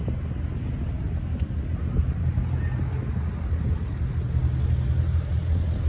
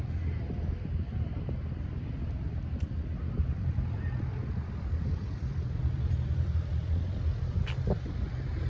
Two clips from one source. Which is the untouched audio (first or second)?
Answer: first